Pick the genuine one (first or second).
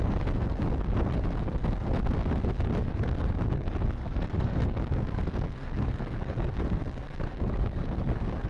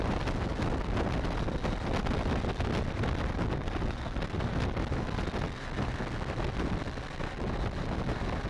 second